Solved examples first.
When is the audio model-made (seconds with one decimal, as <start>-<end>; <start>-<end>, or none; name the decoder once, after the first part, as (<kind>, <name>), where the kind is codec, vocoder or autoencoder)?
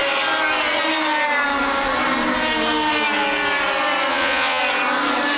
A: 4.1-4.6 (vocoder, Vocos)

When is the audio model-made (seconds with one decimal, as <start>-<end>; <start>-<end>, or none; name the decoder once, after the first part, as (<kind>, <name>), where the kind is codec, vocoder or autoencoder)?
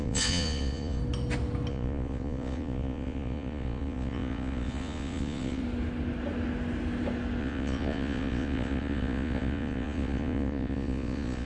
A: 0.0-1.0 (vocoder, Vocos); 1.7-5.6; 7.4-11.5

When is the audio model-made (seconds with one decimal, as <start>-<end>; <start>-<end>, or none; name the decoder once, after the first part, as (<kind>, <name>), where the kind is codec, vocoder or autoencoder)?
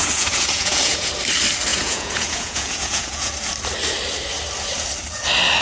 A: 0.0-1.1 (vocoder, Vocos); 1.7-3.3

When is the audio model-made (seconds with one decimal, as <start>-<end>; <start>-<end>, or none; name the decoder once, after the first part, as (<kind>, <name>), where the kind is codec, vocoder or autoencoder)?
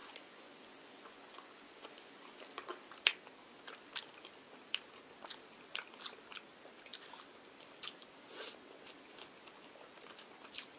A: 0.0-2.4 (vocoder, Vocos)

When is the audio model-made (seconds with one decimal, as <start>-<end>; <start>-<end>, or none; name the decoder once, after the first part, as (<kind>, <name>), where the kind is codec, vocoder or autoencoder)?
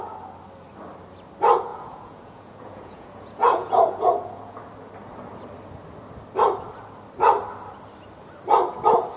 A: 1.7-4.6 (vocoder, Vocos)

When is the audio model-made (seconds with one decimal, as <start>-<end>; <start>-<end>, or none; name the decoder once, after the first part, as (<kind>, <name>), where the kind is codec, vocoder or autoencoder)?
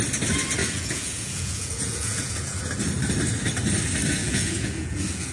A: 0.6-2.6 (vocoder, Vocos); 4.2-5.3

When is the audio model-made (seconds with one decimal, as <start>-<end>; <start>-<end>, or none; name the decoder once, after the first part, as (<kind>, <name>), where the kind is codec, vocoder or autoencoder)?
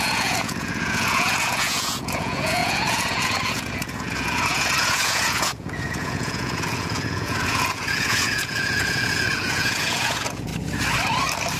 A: 0.0-10.5 (vocoder, Vocos)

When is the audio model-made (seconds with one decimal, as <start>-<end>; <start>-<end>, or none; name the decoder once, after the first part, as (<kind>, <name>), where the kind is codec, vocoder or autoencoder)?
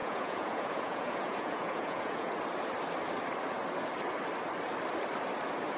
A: 0.0-2.4 (vocoder, Vocos)